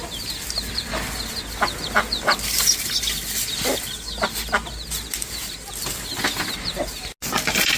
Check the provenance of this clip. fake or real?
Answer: real